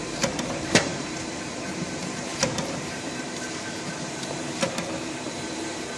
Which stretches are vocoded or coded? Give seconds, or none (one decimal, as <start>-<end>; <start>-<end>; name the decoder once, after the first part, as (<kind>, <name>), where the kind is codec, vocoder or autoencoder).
0.0-6.0 (vocoder, BigVGAN v2)